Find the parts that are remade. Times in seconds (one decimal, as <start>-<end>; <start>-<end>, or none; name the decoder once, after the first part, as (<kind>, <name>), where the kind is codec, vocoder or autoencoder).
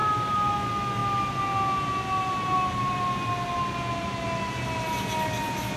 0.0-0.5 (vocoder, BigVGAN v2)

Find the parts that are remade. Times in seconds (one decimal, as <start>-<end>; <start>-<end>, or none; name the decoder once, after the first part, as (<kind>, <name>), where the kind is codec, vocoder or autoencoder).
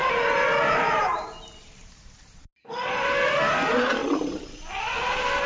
0.0-3.3 (vocoder, BigVGAN v2); 4.0-4.8